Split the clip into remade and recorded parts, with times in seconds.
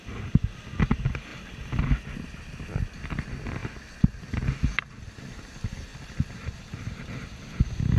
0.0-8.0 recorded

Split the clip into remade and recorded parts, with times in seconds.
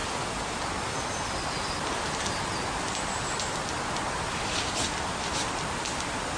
0.0-6.4 recorded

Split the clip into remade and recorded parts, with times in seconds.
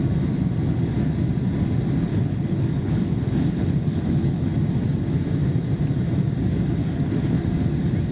0.0-2.1 recorded; 2.1-4.5 remade; 4.5-6.8 recorded; 6.8-7.4 remade; 7.4-8.1 recorded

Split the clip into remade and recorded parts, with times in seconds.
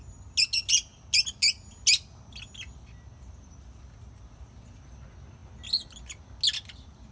0.0-7.1 recorded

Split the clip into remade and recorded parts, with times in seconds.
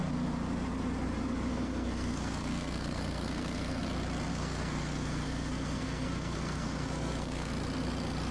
0.0-1.5 recorded; 1.5-3.8 remade; 3.8-4.3 recorded; 4.3-7.5 remade; 7.5-8.3 recorded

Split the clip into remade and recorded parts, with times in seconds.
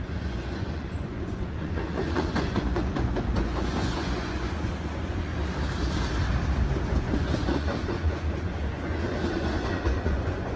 0.0-5.3 remade; 5.3-7.0 recorded; 7.0-10.6 remade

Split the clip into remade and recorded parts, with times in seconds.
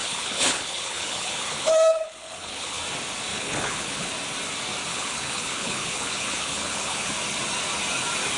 0.0-2.8 remade; 2.8-3.3 recorded; 3.3-4.1 remade; 4.1-4.9 recorded; 4.9-7.1 remade; 7.1-8.4 recorded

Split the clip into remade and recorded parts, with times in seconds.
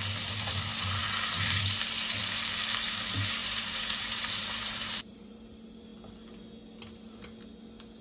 0.0-3.4 recorded; 3.4-5.3 remade; 5.3-8.0 recorded